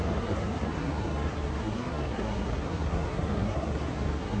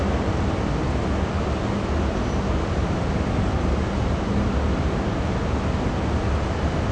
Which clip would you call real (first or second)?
second